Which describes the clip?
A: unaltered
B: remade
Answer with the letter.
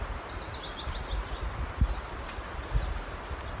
A